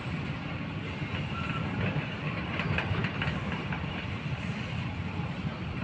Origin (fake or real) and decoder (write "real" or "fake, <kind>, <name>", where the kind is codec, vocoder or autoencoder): fake, vocoder, BigVGAN v2